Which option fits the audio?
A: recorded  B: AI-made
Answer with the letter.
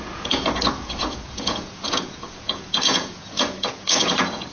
B